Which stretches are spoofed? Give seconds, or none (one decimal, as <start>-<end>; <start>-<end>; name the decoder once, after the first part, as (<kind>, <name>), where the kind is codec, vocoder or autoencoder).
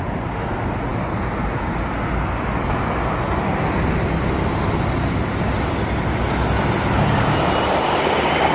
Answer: none